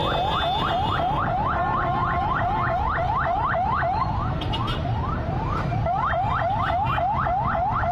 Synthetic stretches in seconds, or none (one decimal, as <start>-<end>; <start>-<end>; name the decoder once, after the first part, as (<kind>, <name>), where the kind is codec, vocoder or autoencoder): 0.7-7.9 (vocoder, BigVGAN v2)